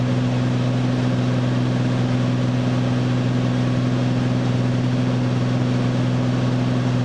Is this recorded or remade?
recorded